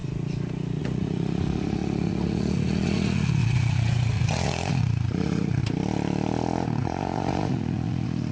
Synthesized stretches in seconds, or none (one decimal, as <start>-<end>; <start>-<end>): 0.8-5.6; 6.8-8.3